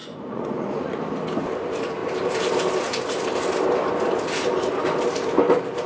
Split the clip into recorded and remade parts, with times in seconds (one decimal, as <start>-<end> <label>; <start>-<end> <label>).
0.0-1.0 remade; 1.0-5.9 recorded